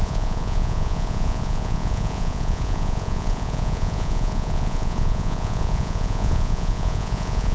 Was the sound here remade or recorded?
remade